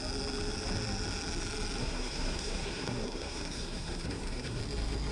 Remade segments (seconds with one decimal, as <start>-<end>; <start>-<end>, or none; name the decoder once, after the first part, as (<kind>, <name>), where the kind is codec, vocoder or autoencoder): 1.8-4.6 (codec, SNAC)